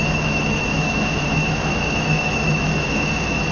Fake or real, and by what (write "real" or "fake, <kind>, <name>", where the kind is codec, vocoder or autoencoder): fake, autoencoder, DAC-VAE